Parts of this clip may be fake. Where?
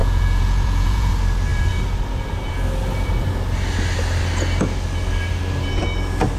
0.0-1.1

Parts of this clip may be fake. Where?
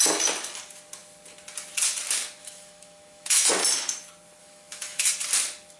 2.4-3.5; 4.4-5.1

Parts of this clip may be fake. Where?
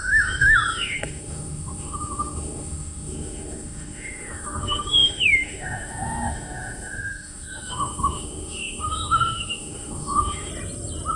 0.0-10.5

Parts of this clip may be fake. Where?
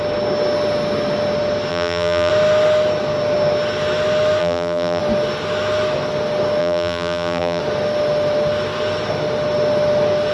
1.7-2.3; 4.4-5.0; 6.6-7.6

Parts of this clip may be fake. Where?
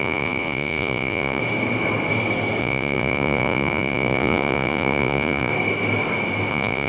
0.0-1.4; 2.6-5.5; 6.5-6.9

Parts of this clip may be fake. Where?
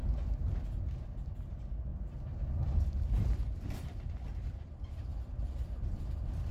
1.0-1.9; 2.9-6.5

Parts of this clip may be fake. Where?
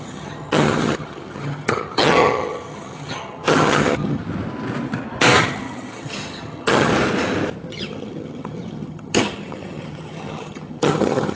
0.0-4.2; 5.4-6.9; 7.7-11.4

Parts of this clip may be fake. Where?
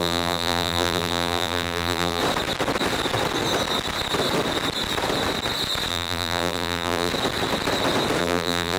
0.0-2.2; 5.9-7.1; 8.2-8.8